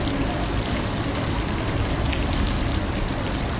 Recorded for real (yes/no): no